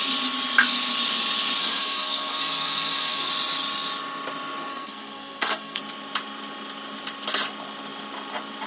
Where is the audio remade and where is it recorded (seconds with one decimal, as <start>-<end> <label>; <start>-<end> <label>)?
0.0-1.6 recorded; 1.6-3.3 remade; 3.3-4.7 recorded; 4.7-5.8 remade; 5.8-8.7 recorded

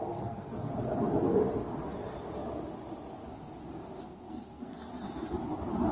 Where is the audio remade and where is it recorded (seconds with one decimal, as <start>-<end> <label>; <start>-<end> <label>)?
0.0-0.9 remade; 0.9-4.0 recorded; 4.0-4.9 remade; 4.9-5.9 recorded

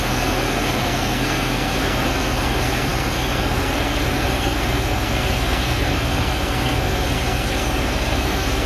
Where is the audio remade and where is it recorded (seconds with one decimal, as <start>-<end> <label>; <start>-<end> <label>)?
0.0-8.7 remade

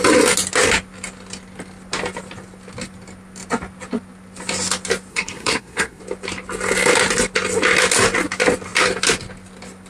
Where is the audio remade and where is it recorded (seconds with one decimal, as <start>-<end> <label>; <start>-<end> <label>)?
0.0-5.1 recorded; 5.1-6.0 remade; 6.0-9.9 recorded

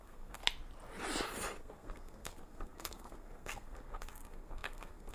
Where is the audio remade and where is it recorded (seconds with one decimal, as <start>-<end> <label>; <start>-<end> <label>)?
0.0-0.4 remade; 0.4-1.6 recorded; 1.6-5.1 remade